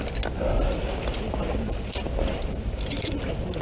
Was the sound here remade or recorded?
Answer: recorded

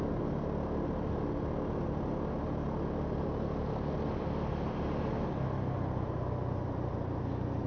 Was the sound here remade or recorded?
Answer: recorded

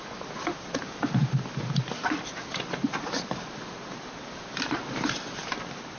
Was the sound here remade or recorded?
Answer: recorded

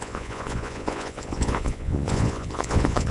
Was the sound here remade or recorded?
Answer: remade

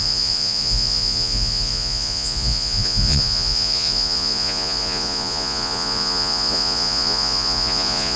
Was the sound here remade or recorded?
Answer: remade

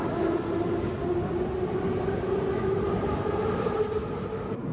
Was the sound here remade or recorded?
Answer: recorded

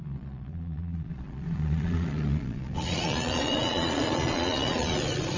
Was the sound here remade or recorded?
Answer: remade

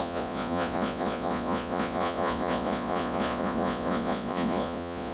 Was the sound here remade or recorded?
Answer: remade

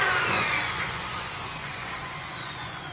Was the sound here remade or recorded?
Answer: remade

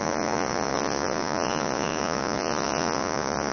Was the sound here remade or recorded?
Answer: remade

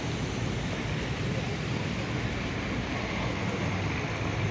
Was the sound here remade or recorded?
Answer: recorded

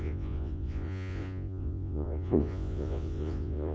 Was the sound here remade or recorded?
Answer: remade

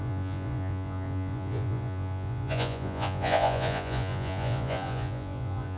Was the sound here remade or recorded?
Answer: remade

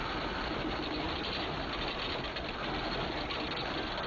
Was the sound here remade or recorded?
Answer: recorded